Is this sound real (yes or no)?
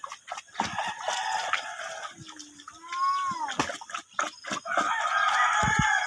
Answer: yes